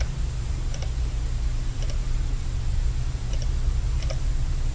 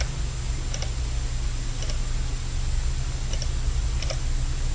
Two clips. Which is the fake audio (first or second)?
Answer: first